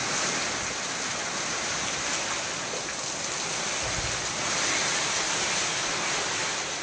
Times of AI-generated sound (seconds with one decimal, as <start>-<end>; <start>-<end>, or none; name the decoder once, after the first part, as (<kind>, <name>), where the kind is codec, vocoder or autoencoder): none